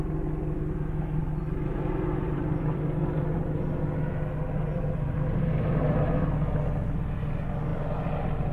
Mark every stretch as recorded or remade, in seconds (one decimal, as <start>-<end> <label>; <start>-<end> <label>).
0.0-1.2 recorded; 1.2-3.4 remade; 3.4-4.7 recorded; 4.7-6.0 remade; 6.0-8.5 recorded

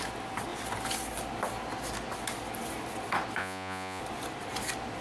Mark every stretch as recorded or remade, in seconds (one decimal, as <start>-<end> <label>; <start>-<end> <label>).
0.0-3.4 recorded; 3.4-4.0 remade; 4.0-5.0 recorded

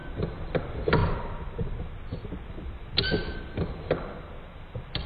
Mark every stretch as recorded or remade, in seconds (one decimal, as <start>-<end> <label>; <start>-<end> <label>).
0.0-5.1 recorded

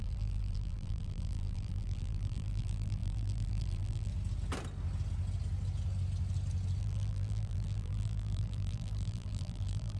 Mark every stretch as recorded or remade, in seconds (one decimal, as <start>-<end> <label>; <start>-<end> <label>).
0.0-4.1 remade; 4.1-6.8 recorded; 6.8-10.0 remade